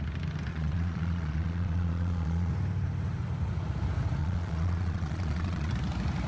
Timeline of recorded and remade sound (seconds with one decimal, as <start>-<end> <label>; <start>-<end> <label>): 0.0-0.5 recorded; 0.5-2.5 remade; 2.5-4.2 recorded; 4.2-5.7 remade; 5.7-6.3 recorded